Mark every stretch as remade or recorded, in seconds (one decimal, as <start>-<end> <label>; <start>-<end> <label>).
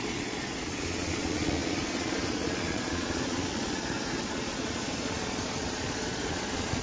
0.0-6.8 remade